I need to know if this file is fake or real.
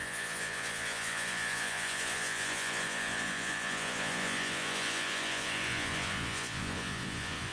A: fake